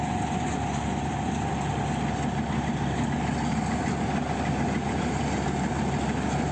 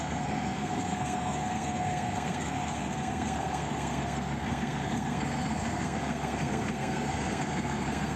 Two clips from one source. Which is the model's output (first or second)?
second